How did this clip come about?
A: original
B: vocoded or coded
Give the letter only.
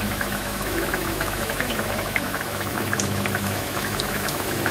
B